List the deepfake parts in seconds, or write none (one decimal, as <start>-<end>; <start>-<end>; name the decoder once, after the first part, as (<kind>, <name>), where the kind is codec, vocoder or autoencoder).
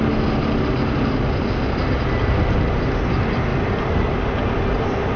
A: none